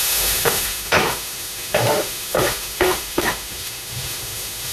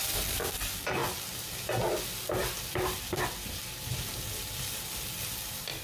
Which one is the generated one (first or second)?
first